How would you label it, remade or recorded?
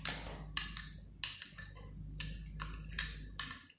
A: recorded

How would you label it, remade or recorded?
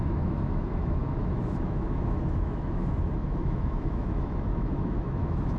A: remade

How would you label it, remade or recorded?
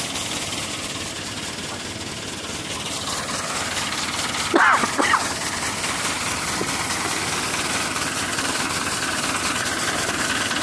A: recorded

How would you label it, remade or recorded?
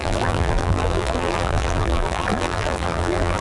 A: remade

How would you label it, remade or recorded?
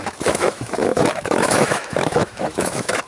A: remade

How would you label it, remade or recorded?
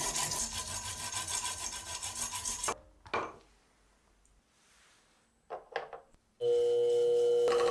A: recorded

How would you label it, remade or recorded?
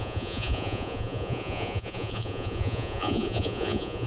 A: remade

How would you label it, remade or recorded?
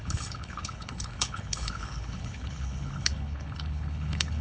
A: remade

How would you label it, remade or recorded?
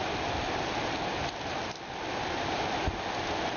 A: recorded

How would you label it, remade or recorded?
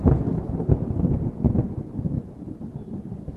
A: recorded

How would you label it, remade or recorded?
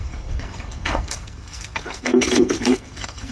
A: remade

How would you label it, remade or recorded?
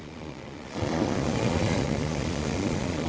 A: remade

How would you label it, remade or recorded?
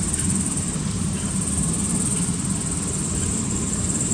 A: remade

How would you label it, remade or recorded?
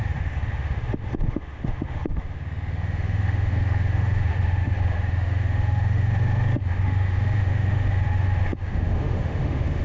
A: remade